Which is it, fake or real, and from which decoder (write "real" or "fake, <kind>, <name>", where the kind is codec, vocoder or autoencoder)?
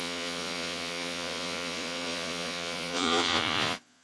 fake, vocoder, Vocos